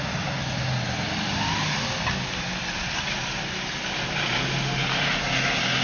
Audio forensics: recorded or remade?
recorded